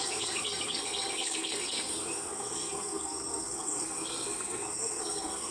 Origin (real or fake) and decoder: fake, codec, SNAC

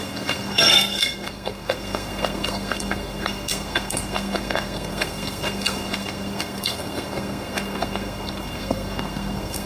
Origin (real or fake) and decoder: fake, codec, SNAC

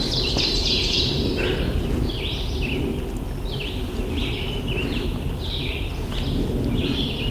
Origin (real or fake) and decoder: real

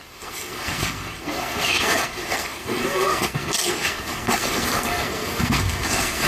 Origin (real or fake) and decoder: fake, codec, SNAC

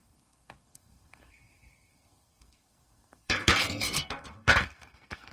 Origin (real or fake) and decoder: fake, codec, SNAC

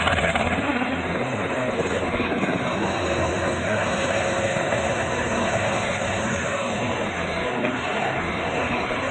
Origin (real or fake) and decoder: fake, codec, SNAC